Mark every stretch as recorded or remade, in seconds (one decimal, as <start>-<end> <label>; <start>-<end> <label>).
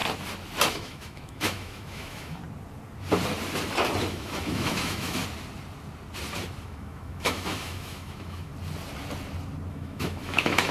0.0-0.7 recorded; 0.7-2.4 remade; 2.4-4.1 recorded; 4.1-5.2 remade; 5.2-6.6 recorded; 6.6-8.5 remade; 8.5-9.7 recorded; 9.7-10.7 remade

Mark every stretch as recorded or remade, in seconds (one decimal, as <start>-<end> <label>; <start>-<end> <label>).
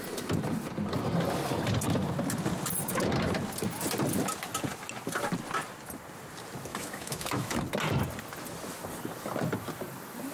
0.0-6.7 recorded; 6.7-7.6 remade; 7.6-10.3 recorded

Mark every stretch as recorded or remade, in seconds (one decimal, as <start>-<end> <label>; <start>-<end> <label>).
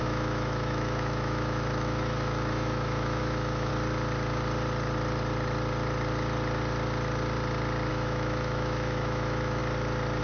0.0-3.7 remade; 3.7-7.9 recorded; 7.9-9.6 remade; 9.6-10.2 recorded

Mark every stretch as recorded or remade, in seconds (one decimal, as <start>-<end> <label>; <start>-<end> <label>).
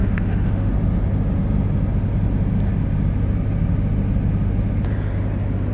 0.0-0.7 remade; 0.7-5.7 recorded